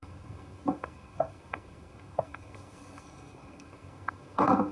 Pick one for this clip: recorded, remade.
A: remade